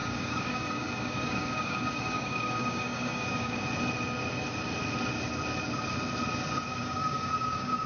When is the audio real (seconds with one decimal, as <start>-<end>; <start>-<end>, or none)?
3.6-6.7